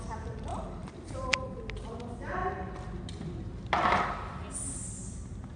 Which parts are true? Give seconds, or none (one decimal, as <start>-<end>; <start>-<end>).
0.0-0.5; 1.6-5.6